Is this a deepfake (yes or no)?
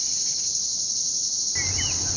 no